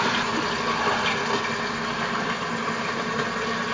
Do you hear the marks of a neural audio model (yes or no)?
no